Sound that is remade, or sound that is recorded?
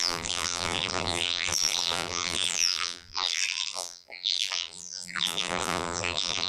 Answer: remade